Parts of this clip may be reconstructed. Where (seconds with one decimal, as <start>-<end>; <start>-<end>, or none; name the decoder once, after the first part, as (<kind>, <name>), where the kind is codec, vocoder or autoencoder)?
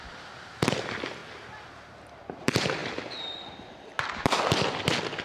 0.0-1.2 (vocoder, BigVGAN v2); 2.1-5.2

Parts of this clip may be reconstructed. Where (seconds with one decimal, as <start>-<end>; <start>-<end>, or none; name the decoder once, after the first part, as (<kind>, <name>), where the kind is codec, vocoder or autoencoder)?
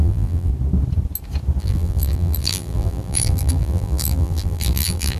0.0-0.5 (vocoder, BigVGAN v2); 1.6-5.2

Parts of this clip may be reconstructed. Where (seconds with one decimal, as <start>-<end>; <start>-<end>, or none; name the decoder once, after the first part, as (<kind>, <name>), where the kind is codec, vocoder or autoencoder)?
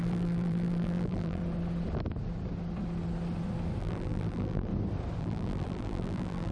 0.0-1.4 (vocoder, BigVGAN v2); 3.8-4.7; 5.2-6.5